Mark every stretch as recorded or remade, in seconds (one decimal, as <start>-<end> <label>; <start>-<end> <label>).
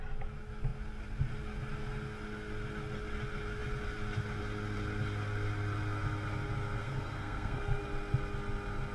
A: 0.0-6.8 recorded; 6.8-7.8 remade; 7.8-8.9 recorded